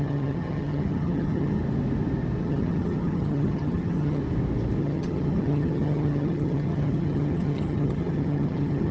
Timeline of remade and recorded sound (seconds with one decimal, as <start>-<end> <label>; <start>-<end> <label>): 0.0-1.6 remade; 1.6-2.4 recorded; 2.4-4.2 remade; 4.2-4.8 recorded; 4.8-8.9 remade